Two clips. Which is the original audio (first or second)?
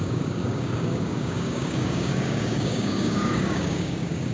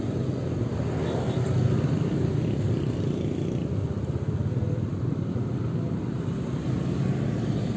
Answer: second